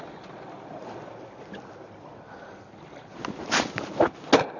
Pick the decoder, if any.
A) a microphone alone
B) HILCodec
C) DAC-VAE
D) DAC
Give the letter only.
A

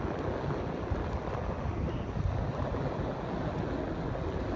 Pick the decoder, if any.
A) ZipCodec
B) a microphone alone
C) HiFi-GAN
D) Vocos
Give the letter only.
B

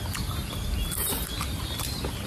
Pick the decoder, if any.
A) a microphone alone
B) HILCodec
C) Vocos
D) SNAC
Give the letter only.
A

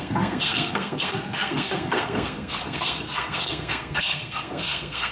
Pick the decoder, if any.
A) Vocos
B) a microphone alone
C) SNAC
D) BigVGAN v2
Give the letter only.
C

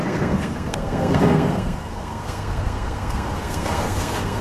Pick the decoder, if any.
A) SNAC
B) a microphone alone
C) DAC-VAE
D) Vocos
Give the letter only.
A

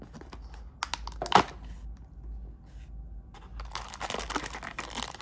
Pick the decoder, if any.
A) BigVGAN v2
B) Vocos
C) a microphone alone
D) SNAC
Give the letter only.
C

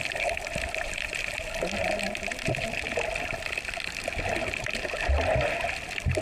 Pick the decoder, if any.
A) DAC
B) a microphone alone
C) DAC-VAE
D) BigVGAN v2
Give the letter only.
B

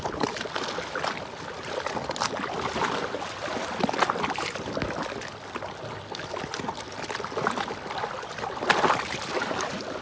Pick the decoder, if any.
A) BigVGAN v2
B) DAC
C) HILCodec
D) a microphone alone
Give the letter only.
D